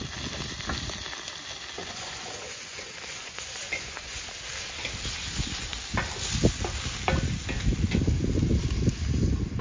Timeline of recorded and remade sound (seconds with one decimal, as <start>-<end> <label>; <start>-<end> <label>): 0.0-1.8 recorded; 1.8-4.2 remade; 4.2-9.6 recorded